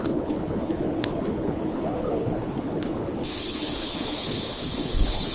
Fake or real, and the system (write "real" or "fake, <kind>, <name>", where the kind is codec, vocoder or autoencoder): fake, codec, HILCodec